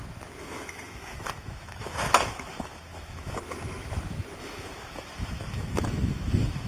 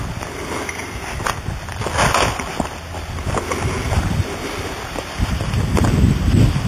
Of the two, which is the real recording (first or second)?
second